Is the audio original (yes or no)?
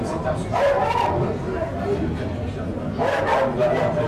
yes